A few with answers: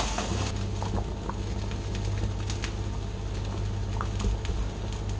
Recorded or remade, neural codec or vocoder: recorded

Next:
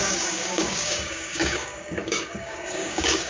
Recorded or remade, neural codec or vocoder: remade, codec, DAC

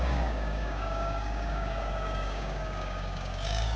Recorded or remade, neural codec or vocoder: remade, codec, DAC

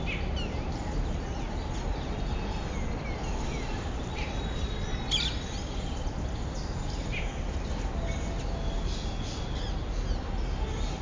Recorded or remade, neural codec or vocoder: recorded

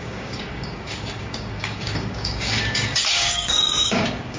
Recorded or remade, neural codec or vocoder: remade, codec, DAC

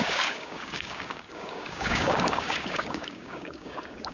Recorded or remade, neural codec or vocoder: remade, codec, DAC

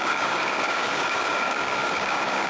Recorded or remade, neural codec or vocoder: remade, codec, DAC